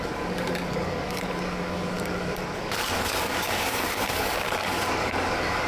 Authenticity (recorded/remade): remade